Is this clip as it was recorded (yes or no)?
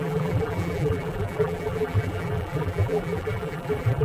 no